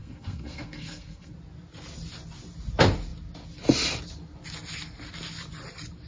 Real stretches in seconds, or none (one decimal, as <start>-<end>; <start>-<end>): 1.3-6.1